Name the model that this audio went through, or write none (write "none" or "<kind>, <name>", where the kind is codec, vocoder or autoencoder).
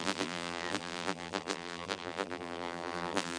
vocoder, BigVGAN v2